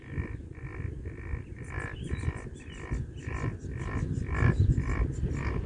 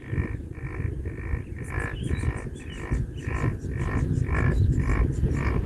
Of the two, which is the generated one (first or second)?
first